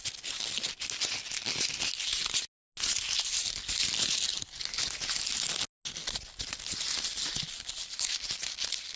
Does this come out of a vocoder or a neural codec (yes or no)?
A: no